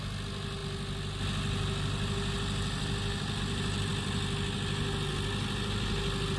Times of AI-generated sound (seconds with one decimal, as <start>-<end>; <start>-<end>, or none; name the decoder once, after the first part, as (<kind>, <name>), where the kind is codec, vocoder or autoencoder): none